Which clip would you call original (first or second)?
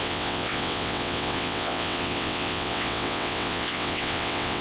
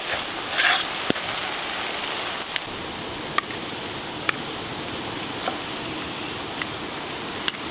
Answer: second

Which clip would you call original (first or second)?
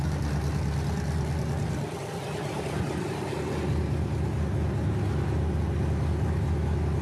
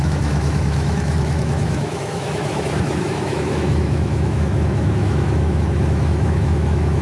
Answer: first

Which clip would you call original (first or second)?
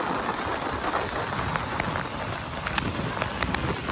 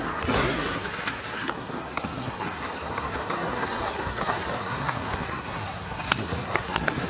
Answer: first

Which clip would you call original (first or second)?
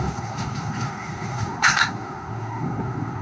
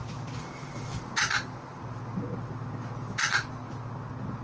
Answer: second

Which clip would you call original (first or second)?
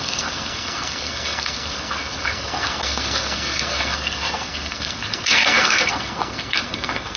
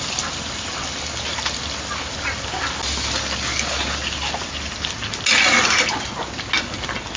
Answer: second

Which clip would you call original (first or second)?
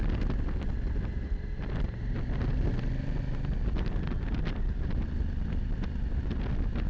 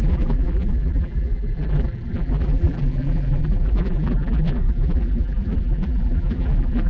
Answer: first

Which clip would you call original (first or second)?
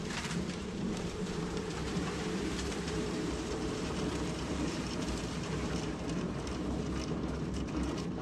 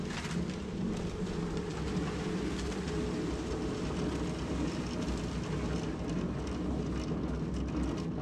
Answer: second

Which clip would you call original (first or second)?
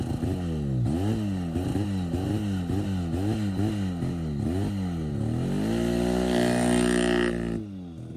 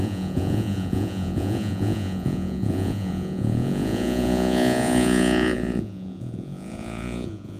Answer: first